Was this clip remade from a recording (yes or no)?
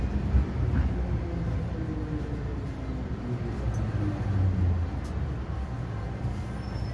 no